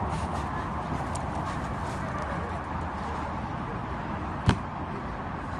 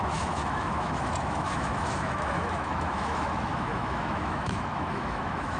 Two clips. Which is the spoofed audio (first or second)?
second